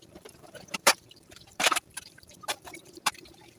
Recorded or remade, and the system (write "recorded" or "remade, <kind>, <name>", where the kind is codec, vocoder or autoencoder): remade, vocoder, BigVGAN v2